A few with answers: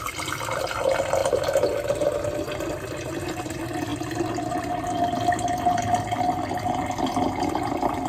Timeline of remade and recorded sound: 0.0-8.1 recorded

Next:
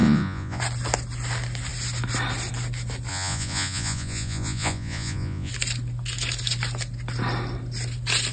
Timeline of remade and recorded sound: 0.0-0.6 remade; 0.6-3.1 recorded; 3.1-5.5 remade; 5.5-8.3 recorded

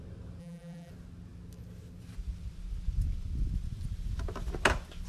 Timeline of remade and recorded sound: 0.0-0.4 recorded; 0.4-0.9 remade; 0.9-5.1 recorded

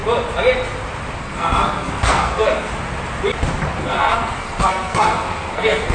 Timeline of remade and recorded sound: 0.0-1.2 recorded; 1.2-2.7 remade; 2.7-3.8 recorded; 3.8-5.9 remade

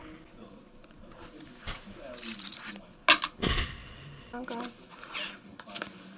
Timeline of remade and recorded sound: 0.0-6.2 recorded

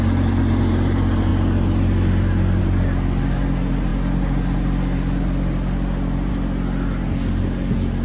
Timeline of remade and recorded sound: 0.0-8.0 recorded

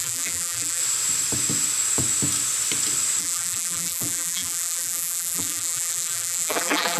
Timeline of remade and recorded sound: 0.0-0.8 remade; 0.8-3.2 recorded; 3.2-7.0 remade